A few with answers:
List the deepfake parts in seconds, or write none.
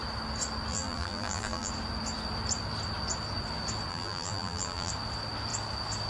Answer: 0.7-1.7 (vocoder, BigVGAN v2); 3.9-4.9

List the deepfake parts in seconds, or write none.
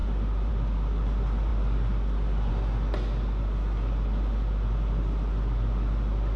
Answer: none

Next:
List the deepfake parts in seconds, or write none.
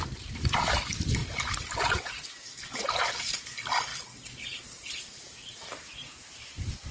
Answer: 1.2-3.5 (vocoder, BigVGAN v2)